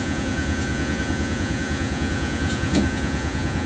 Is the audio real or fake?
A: fake